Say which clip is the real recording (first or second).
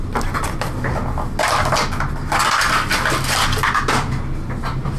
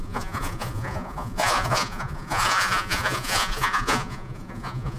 first